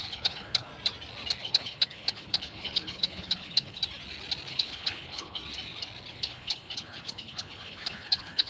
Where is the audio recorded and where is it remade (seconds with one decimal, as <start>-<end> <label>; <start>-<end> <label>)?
0.0-0.7 remade; 0.7-1.4 recorded; 1.4-3.8 remade; 3.8-4.5 recorded; 4.5-5.4 remade; 5.4-6.1 recorded; 6.1-8.5 remade